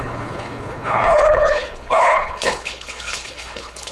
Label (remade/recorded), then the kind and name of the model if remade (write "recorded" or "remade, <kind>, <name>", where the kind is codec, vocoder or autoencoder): remade, codec, HILCodec